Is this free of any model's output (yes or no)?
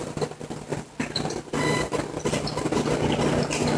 yes